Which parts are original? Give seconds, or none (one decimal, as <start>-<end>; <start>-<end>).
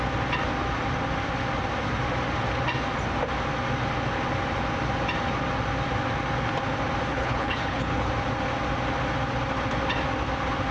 0.0-7.1; 8.1-10.7